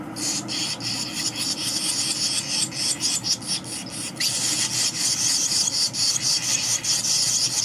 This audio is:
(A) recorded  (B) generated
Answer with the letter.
A